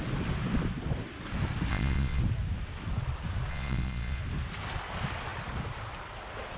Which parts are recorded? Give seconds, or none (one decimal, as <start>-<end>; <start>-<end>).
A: 0.0-1.7; 2.2-3.5; 4.2-6.6